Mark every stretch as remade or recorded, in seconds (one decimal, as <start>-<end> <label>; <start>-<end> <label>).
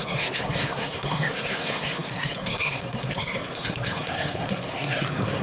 0.0-5.4 remade